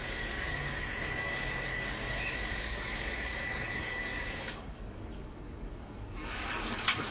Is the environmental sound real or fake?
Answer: fake